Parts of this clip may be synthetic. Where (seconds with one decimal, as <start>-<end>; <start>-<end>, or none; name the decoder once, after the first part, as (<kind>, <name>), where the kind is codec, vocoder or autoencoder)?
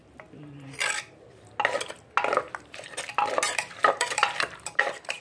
3.8-4.8 (vocoder, BigVGAN v2)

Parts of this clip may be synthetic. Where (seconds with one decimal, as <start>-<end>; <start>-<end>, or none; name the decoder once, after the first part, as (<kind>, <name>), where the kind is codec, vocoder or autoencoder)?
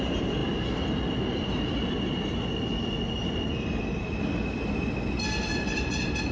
none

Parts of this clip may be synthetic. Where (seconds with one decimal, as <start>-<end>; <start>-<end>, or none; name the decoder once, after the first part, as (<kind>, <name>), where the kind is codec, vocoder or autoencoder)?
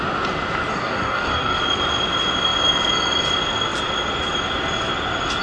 0.7-1.6 (codec, DAC)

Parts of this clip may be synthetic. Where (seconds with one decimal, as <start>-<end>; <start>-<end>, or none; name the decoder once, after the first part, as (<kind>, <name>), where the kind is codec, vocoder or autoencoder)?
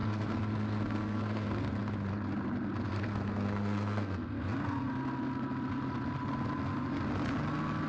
0.0-1.8 (codec, SNAC); 2.9-4.9